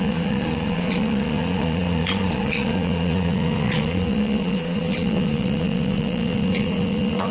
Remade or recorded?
remade